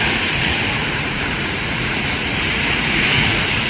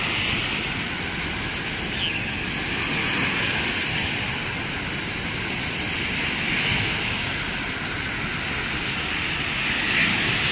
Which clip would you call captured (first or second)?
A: second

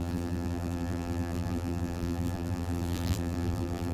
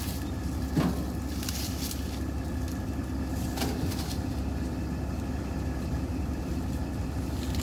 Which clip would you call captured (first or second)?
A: second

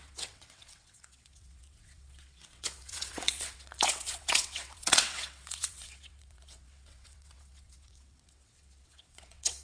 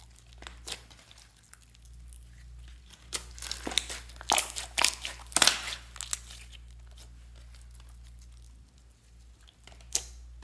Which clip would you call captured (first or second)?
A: second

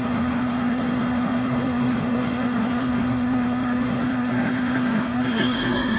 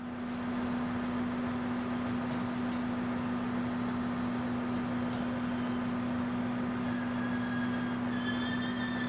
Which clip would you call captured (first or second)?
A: second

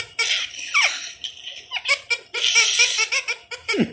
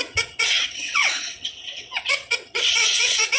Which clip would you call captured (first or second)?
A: first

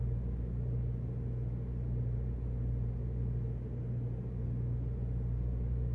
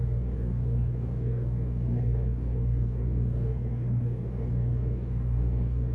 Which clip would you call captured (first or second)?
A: first